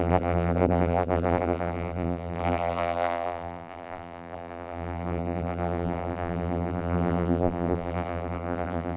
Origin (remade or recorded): remade